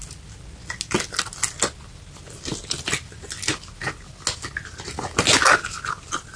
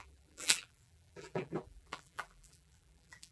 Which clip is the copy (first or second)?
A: second